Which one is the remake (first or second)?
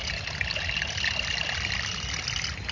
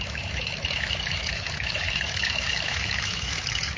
second